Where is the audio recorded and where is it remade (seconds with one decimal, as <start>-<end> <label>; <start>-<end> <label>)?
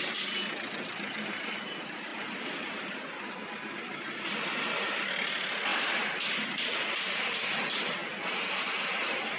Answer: 0.0-2.1 recorded; 2.1-5.1 remade; 5.1-5.7 recorded; 5.7-6.4 remade; 6.4-9.4 recorded